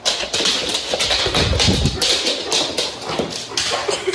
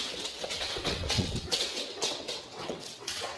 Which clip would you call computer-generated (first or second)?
second